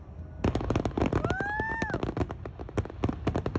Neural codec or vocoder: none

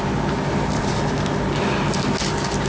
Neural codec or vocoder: none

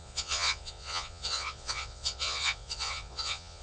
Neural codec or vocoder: vocoder, Vocos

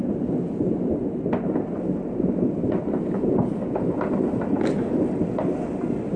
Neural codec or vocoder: none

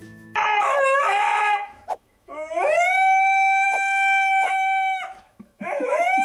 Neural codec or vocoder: autoencoder, DAC-VAE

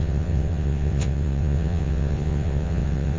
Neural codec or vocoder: vocoder, WaveNeXt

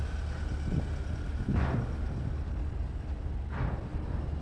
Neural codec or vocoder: none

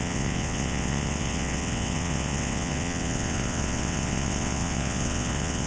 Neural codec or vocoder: vocoder, WaveNeXt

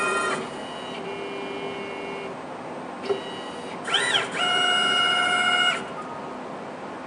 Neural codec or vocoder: none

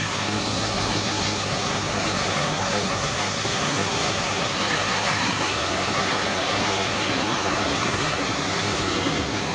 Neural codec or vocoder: codec, SNAC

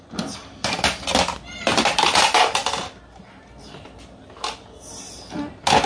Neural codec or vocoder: none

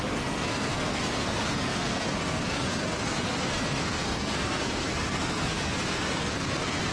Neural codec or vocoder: codec, SNAC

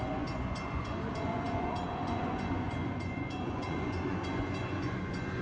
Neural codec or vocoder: vocoder, Vocos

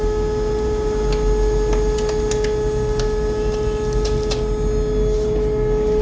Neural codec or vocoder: none